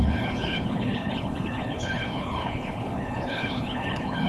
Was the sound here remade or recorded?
remade